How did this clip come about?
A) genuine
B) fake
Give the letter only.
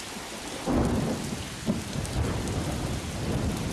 A